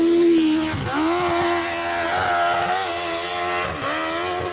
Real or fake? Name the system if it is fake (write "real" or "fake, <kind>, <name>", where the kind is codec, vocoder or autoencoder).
real